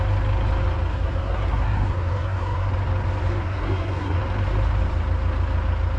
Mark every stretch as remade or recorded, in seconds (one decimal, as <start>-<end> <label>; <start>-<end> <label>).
0.0-0.9 recorded; 0.9-2.7 remade; 2.7-3.3 recorded; 3.3-4.2 remade; 4.2-6.0 recorded